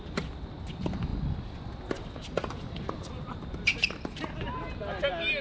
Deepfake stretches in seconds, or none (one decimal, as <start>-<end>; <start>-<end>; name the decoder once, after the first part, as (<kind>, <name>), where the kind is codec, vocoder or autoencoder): none